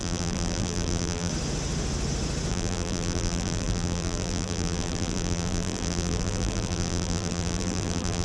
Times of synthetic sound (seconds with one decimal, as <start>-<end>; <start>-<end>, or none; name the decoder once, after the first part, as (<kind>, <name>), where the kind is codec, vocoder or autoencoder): 0.0-1.3 (vocoder, BigVGAN v2); 2.5-8.2